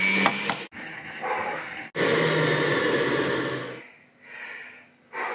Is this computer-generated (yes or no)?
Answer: no